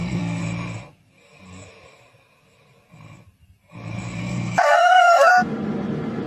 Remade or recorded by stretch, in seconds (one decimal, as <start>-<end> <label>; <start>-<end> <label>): 0.0-0.4 remade; 0.4-4.2 recorded; 4.2-5.3 remade; 5.3-6.3 recorded